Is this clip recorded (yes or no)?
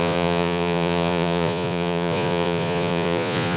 no